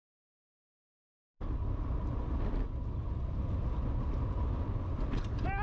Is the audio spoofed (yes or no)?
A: no